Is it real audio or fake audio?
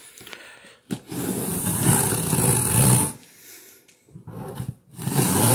real